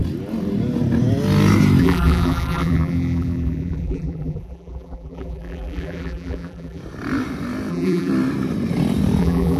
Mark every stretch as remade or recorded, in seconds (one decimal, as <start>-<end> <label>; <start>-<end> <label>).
0.0-1.8 recorded; 1.8-6.8 remade; 6.8-7.7 recorded; 7.7-8.1 remade; 8.1-9.2 recorded; 9.2-9.6 remade